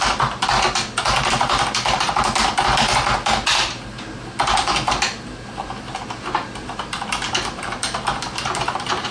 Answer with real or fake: real